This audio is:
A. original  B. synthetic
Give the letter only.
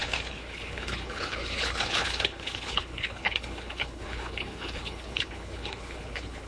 B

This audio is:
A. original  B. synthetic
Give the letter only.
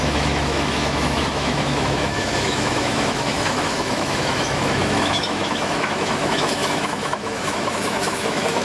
B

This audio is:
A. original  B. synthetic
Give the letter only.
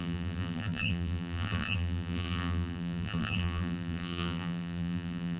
B